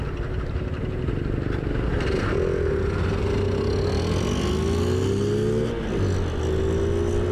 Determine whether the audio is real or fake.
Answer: real